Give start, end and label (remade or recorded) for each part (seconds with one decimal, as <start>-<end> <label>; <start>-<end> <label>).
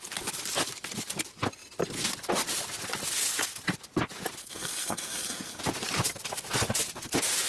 0.0-4.4 recorded; 4.4-5.6 remade; 5.6-7.5 recorded